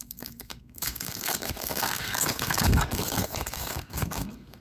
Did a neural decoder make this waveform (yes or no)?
yes